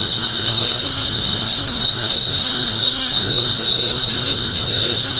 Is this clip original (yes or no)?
no